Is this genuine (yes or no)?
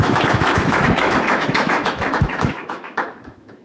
no